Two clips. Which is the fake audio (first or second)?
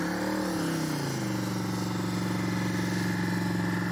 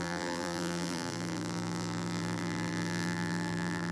second